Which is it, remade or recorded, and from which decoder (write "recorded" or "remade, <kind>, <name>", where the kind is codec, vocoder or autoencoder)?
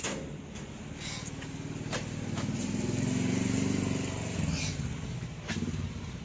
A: recorded